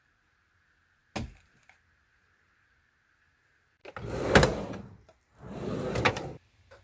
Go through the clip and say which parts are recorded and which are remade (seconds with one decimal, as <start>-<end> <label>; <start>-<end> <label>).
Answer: 0.0-6.8 recorded